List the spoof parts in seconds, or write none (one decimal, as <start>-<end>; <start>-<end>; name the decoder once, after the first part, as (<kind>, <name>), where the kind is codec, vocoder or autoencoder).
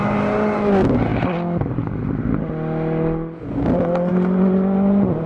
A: none